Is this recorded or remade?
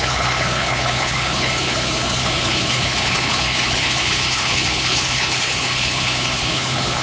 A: remade